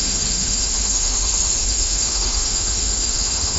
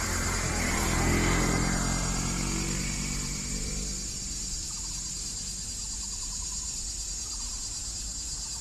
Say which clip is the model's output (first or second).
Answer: first